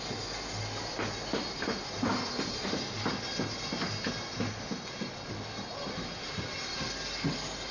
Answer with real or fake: real